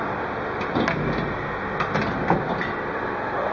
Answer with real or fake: real